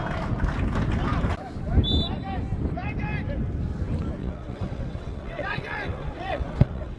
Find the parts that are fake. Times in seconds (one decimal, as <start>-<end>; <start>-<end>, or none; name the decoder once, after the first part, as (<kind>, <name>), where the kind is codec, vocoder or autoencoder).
4.2-7.0 (vocoder, WaveNeXt)